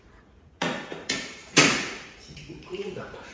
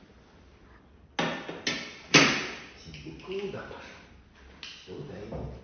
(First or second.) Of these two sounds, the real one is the second